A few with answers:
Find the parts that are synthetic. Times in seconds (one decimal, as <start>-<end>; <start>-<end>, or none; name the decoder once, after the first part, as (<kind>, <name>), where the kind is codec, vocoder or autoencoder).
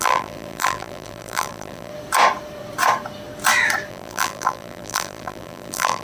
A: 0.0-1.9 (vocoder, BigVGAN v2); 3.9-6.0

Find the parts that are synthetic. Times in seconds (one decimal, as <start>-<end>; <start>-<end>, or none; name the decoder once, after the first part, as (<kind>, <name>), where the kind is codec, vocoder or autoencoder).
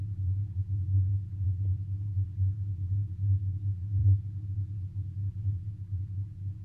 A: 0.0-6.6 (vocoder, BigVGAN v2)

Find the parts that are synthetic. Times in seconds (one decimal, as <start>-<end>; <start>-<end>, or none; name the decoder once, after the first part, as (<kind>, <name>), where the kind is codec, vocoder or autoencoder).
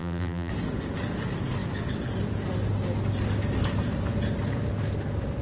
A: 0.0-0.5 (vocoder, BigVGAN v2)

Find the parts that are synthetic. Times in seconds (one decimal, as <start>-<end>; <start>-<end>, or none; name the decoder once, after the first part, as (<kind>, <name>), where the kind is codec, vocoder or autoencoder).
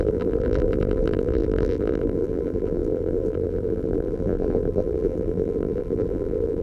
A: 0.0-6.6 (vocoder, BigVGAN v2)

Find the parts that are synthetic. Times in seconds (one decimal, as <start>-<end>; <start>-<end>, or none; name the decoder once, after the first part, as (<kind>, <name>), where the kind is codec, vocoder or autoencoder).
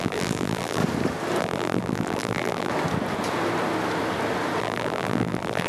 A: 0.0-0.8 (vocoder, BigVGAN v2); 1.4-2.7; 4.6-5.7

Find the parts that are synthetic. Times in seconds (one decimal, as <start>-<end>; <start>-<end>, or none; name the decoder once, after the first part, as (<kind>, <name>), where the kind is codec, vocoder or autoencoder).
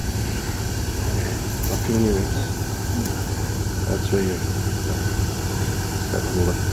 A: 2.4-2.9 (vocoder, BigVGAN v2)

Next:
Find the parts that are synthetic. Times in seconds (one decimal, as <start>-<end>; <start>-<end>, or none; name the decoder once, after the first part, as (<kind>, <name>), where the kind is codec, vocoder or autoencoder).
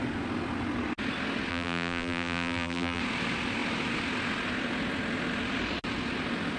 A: 1.5-3.0 (vocoder, BigVGAN v2)